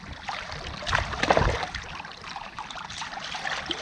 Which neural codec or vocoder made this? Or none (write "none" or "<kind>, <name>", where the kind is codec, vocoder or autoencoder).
vocoder, BigVGAN v2